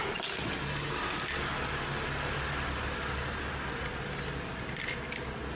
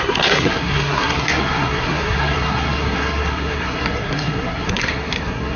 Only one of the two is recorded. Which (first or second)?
first